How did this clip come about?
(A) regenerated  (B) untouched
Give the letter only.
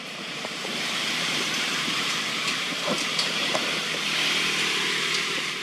A